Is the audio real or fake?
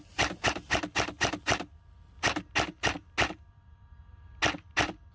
real